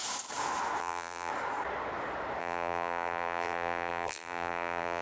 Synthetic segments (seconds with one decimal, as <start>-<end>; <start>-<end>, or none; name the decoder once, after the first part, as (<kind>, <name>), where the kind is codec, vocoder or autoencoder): 0.8-1.3 (vocoder, BigVGAN v2); 2.4-5.0